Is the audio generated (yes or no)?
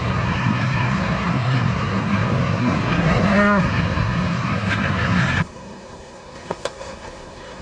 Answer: yes